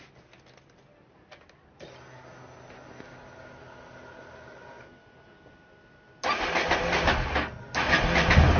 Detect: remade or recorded recorded